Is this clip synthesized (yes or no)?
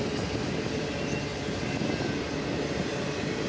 no